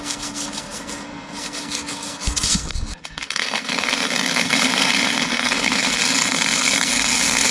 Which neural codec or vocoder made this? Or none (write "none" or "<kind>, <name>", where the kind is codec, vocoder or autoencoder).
codec, SNAC